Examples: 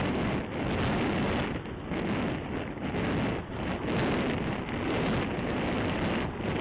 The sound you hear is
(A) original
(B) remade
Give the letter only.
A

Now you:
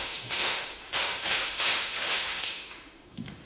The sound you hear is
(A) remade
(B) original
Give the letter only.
A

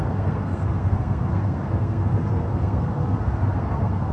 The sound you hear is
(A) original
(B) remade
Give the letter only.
B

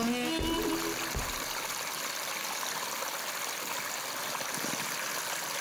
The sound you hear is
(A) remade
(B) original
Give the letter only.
B